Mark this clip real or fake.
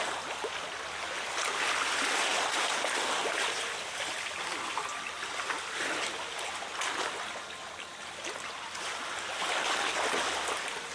real